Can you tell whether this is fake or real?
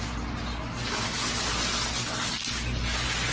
real